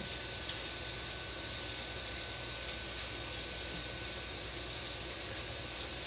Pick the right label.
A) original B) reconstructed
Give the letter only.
A